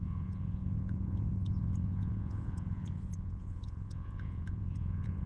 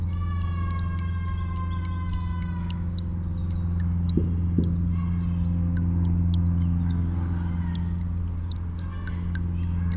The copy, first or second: first